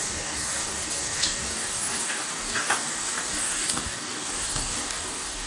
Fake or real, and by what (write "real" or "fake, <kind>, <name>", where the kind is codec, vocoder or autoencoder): fake, codec, DAC